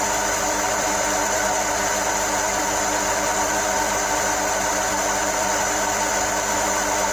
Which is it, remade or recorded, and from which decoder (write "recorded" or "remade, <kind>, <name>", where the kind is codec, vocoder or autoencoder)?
remade, vocoder, BigVGAN v2